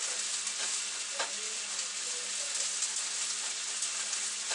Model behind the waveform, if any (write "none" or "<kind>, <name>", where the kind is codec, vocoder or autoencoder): none